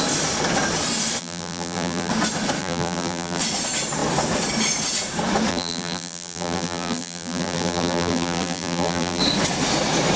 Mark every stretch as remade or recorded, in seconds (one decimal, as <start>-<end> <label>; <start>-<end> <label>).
0.0-1.2 recorded; 1.2-2.1 remade; 2.1-2.6 recorded; 2.6-3.4 remade; 3.4-5.5 recorded; 5.5-9.2 remade; 9.2-10.2 recorded